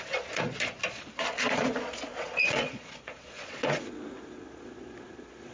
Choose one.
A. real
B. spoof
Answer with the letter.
B